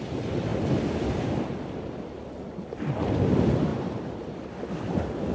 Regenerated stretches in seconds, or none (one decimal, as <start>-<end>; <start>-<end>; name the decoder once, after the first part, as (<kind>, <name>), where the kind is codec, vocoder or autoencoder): 3.7-4.7 (vocoder, BigVGAN v2)